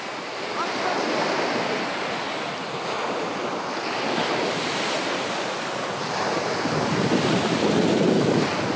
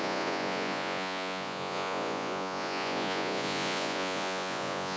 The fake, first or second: second